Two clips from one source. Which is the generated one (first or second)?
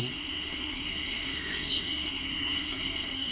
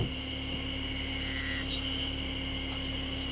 first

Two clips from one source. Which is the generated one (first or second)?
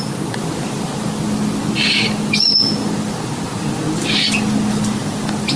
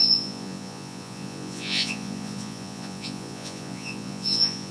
second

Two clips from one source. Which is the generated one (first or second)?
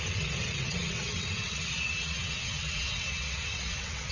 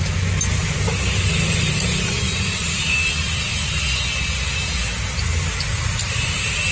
first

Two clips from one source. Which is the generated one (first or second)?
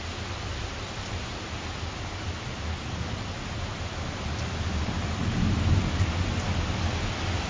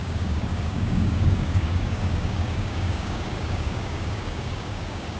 second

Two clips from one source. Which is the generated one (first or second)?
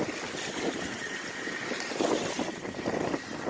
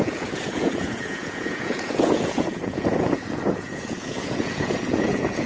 second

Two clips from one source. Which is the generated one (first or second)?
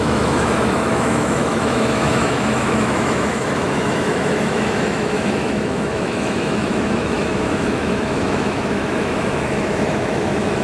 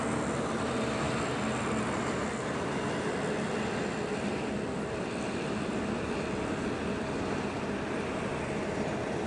first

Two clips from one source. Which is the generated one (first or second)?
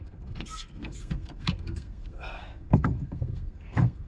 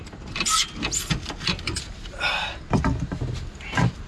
first